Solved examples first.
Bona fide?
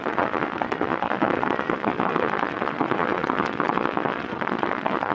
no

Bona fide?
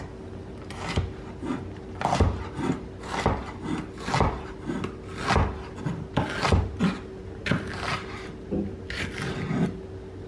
yes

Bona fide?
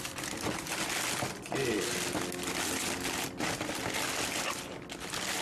yes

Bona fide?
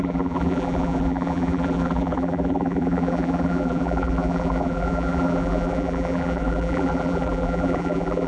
no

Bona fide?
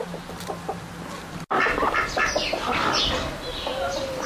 yes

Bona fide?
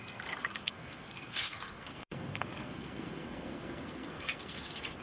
no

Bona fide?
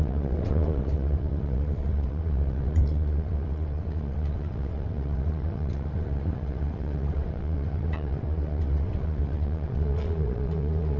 no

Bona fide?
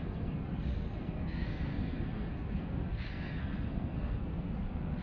no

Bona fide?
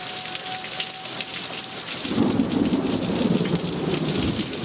yes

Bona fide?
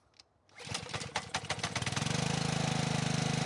yes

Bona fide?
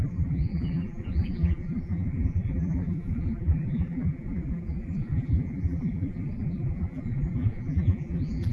no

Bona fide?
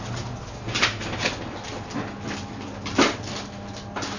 yes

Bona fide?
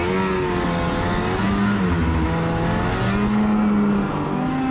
yes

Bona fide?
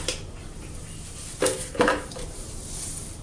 yes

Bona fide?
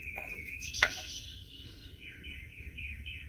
no